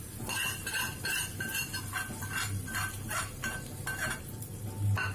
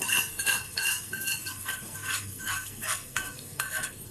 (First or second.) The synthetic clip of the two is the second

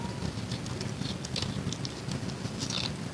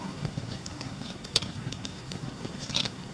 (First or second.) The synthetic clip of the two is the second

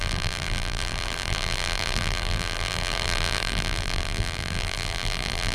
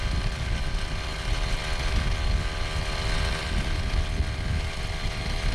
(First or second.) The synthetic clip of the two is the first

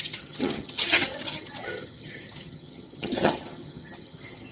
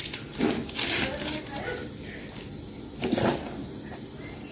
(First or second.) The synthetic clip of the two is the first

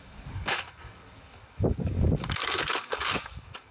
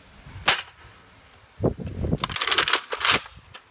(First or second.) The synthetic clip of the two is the first